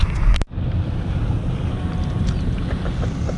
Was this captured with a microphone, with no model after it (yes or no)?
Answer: yes